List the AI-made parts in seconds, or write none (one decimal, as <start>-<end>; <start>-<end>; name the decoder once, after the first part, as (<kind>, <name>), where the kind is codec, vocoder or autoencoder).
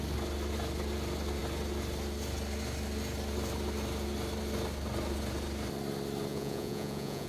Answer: 6.3-7.3 (vocoder, Vocos)